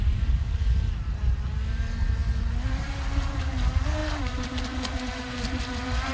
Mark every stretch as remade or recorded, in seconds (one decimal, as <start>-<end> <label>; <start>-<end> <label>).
0.0-6.1 recorded